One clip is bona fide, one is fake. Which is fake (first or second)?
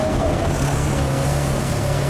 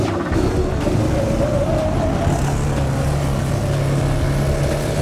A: first